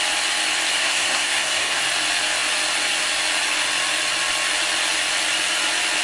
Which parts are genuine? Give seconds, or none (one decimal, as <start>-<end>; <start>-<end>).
0.0-0.8; 1.8-6.0